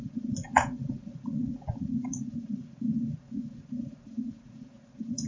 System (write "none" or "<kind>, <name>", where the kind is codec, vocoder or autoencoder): vocoder, Vocos